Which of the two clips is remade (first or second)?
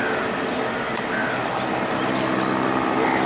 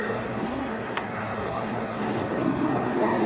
second